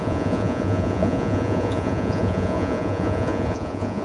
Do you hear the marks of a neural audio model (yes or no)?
yes